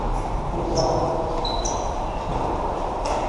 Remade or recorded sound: recorded